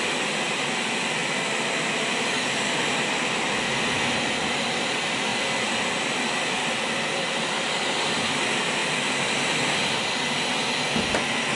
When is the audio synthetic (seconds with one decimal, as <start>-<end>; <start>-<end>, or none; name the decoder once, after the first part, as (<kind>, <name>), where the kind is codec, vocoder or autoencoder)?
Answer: none